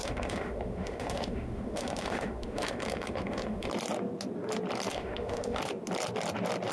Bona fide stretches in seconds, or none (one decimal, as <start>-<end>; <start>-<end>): 3.7-4.9; 5.6-6.7